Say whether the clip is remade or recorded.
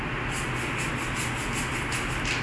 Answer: recorded